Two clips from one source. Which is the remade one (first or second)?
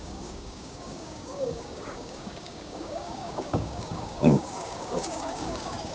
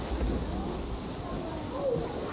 first